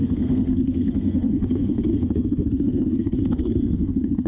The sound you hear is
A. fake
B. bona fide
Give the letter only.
A